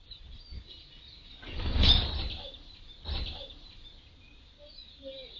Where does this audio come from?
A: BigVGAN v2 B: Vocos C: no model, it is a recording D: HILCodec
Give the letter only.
C